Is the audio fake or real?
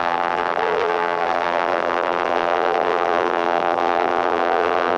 fake